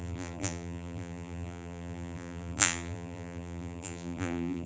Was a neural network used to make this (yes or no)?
yes